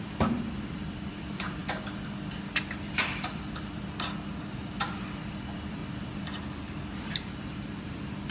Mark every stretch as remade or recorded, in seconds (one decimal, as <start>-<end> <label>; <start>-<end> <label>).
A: 0.0-1.6 remade; 1.6-4.8 recorded; 4.8-5.8 remade; 5.8-7.0 recorded; 7.0-8.3 remade